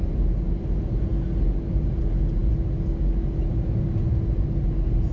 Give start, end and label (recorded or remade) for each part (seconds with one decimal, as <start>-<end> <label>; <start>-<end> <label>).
0.0-5.1 recorded